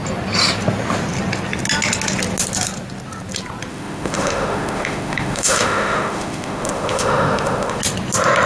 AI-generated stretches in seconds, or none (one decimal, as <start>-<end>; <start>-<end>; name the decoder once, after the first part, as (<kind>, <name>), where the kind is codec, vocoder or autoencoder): 3.7-7.8 (autoencoder, DAC-VAE)

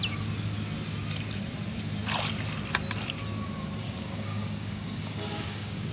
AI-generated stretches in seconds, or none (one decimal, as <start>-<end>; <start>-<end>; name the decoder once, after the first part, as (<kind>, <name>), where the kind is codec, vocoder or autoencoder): 3.8-5.9 (codec, DAC)

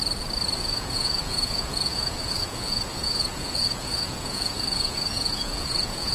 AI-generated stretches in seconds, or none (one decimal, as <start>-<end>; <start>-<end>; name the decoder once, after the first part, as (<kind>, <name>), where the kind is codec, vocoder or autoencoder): 0.6-6.1 (vocoder, Vocos)